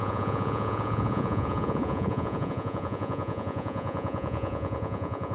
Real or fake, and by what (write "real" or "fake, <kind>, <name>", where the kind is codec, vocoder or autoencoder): fake, vocoder, Vocos